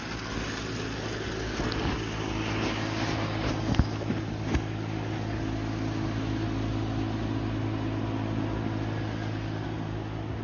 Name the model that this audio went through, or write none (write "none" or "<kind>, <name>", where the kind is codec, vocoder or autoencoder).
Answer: none